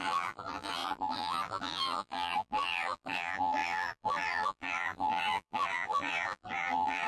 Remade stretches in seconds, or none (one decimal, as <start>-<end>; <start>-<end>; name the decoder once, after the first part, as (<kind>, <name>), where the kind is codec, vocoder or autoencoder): 0.0-7.1 (vocoder, BigVGAN v2)